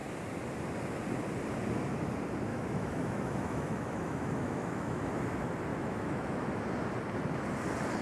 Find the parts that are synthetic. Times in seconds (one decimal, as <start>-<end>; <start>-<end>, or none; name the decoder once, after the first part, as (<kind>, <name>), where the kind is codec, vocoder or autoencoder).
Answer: 2.5-5.1 (autoencoder, DAC-VAE); 5.7-6.6